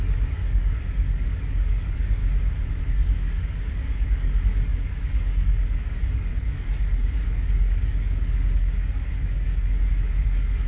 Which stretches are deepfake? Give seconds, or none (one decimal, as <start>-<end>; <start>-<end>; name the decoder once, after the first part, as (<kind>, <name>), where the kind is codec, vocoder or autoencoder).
0.0-2.2 (codec, DAC); 2.8-10.7

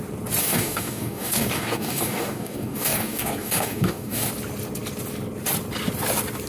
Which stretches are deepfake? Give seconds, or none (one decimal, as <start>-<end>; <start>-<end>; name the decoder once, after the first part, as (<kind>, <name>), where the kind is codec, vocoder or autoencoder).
0.4-4.3 (codec, DAC)

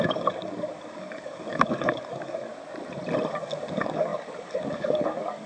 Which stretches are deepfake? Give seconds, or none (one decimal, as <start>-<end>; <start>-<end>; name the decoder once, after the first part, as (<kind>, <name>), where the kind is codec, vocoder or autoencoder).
0.0-2.5 (codec, DAC); 3.3-5.5